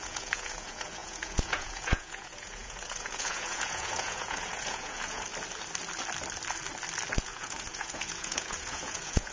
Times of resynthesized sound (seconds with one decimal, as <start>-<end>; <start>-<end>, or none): 0.0-5.3; 7.2-9.3